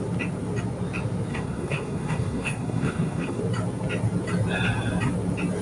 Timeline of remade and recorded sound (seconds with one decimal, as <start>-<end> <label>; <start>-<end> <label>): 0.0-1.3 recorded; 1.3-3.4 remade; 3.4-5.6 recorded